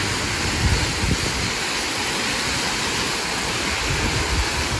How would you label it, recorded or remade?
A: recorded